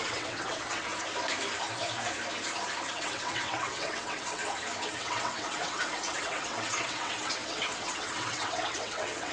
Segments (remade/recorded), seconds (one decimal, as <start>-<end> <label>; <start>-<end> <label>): 0.0-0.9 remade; 0.9-2.9 recorded; 2.9-4.4 remade; 4.4-4.9 recorded; 4.9-9.3 remade